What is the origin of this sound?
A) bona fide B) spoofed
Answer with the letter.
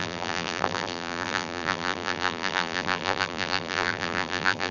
B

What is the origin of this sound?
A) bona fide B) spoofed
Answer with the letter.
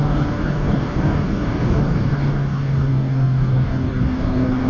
B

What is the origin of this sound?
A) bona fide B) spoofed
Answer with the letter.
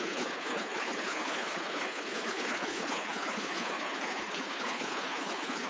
B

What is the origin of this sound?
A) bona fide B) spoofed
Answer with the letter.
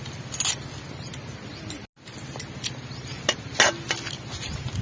A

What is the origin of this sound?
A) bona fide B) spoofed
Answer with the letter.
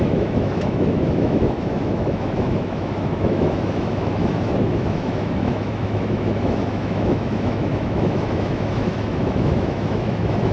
B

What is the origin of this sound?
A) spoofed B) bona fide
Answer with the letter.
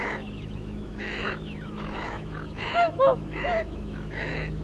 A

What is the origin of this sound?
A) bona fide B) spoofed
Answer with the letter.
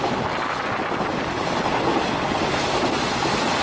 A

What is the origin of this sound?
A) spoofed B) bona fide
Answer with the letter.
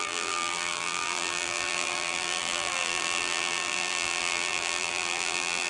A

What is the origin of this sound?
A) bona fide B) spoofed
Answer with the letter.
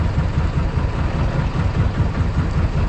A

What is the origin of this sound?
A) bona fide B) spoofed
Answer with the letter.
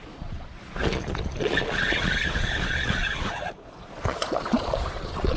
B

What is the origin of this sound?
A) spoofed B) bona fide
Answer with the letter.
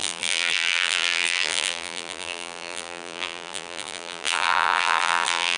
A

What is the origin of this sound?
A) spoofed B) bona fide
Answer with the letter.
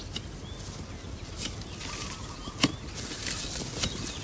B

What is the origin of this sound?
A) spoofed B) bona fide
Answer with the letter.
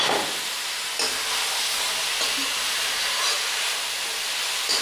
B